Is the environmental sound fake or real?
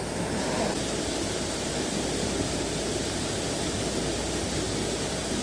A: real